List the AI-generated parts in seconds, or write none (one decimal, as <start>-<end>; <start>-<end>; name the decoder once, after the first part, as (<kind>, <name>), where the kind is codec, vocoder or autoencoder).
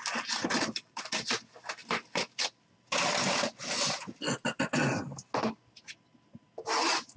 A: 0.4-1.0 (vocoder, BigVGAN v2); 1.8-2.7